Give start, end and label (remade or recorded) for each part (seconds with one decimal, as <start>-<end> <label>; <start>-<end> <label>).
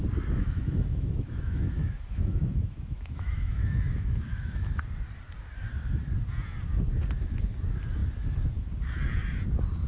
0.0-0.4 recorded; 0.4-4.8 remade; 4.8-9.9 recorded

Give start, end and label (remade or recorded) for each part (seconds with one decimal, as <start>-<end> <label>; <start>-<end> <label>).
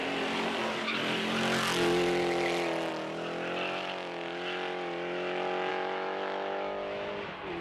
0.0-5.7 recorded; 5.7-7.1 remade; 7.1-7.6 recorded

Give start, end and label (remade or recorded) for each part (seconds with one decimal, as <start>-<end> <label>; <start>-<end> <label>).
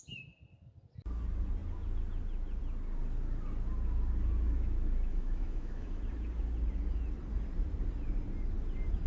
0.0-5.1 recorded; 5.1-6.0 remade; 6.0-9.1 recorded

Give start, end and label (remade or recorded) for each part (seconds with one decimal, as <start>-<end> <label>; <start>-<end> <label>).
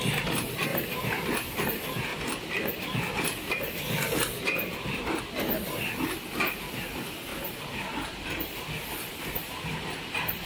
0.0-10.5 recorded